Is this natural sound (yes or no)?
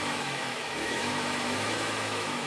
no